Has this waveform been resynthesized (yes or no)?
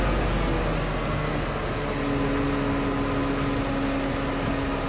no